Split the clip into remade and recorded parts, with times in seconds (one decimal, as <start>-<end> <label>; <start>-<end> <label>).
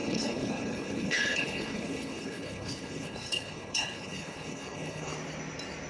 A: 0.0-5.1 remade; 5.1-5.9 recorded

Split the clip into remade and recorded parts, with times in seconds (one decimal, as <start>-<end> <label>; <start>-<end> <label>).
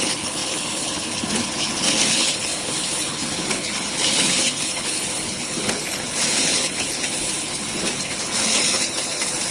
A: 0.0-9.5 remade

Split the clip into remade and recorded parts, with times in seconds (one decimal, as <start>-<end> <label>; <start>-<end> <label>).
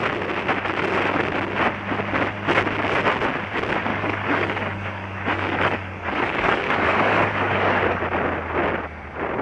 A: 0.0-3.9 recorded; 3.9-8.0 remade; 8.0-9.4 recorded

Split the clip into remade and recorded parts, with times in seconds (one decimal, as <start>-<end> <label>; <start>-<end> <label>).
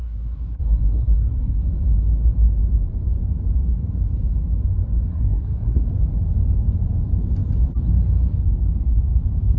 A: 0.0-1.6 remade; 1.6-5.1 recorded; 5.1-5.9 remade; 5.9-9.6 recorded